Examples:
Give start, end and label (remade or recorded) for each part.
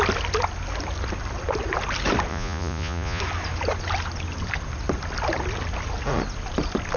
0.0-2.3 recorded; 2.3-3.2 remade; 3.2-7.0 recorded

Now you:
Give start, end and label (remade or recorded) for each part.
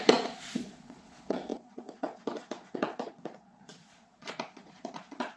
0.0-5.4 remade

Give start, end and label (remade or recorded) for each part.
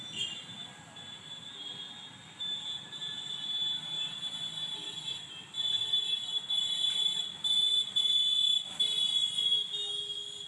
0.0-10.5 recorded